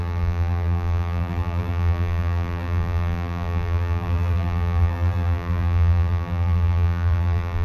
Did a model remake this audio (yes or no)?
yes